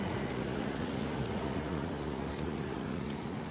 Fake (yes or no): yes